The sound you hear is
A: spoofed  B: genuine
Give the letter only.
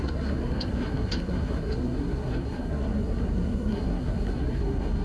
A